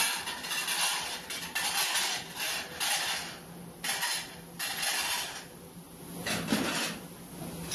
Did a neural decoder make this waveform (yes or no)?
no